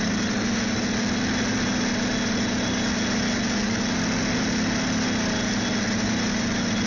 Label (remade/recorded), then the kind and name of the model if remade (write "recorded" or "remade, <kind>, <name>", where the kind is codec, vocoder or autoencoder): recorded